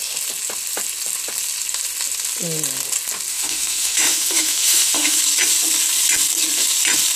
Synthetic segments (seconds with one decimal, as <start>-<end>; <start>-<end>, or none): 3.3-5.2